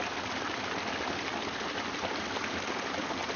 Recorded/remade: recorded